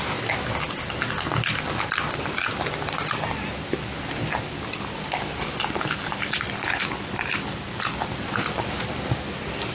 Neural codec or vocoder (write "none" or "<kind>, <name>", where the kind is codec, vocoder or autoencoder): none